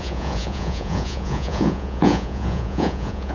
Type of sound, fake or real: fake